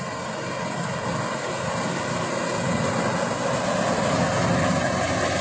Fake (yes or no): no